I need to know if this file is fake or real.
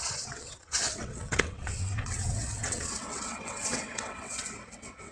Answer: fake